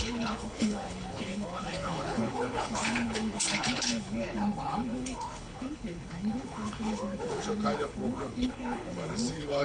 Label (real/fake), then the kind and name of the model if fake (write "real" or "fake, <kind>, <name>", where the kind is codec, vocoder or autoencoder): fake, codec, HILCodec